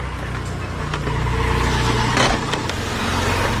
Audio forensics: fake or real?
real